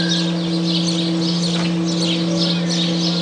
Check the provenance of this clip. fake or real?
real